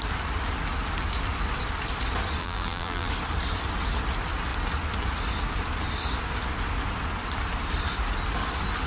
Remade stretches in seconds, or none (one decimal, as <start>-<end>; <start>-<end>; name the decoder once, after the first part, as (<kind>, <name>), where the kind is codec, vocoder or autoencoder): 2.4-3.1 (vocoder, BigVGAN v2)